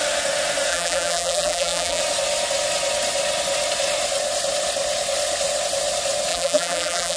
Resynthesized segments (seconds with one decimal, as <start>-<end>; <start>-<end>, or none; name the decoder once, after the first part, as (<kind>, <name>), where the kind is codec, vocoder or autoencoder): 0.7-2.0 (vocoder, BigVGAN v2); 6.3-7.2